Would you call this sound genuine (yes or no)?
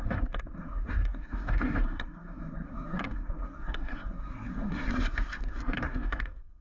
no